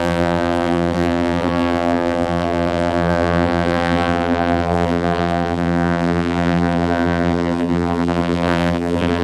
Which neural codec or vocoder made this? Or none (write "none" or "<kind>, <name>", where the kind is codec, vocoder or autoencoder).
vocoder, BigVGAN v2